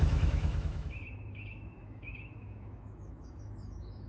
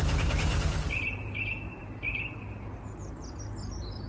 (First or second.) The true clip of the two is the second